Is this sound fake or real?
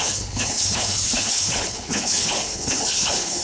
fake